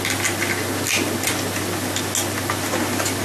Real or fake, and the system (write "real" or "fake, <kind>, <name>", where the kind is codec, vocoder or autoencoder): real